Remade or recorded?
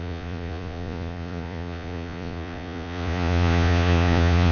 remade